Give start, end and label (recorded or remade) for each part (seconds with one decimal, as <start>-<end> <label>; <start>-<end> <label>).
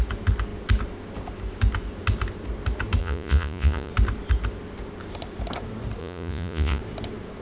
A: 0.0-3.0 recorded; 3.0-3.9 remade; 3.9-6.0 recorded; 6.0-6.8 remade; 6.8-7.4 recorded